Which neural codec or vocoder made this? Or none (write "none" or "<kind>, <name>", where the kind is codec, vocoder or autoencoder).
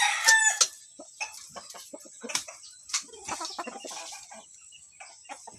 none